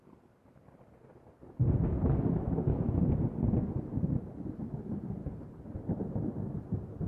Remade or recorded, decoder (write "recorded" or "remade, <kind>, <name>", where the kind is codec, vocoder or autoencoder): recorded